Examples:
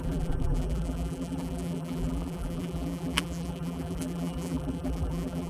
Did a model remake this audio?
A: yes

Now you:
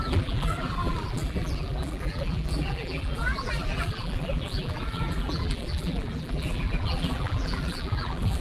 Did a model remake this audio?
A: yes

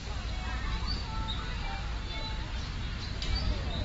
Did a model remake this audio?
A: no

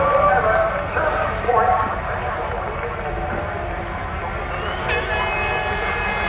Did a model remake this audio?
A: no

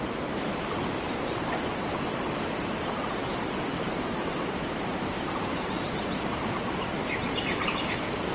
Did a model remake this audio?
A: yes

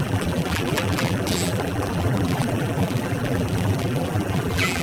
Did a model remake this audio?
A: yes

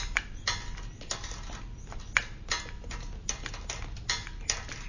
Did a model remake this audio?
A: no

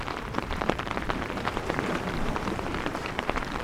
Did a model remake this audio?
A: yes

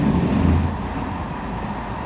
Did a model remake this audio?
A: no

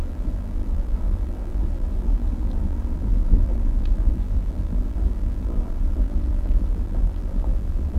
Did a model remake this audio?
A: yes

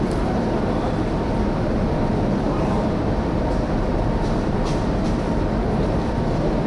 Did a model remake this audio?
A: yes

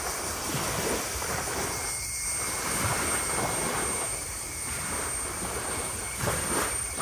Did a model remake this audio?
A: no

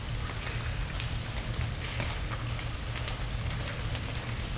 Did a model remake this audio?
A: no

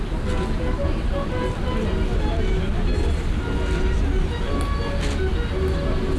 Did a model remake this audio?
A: no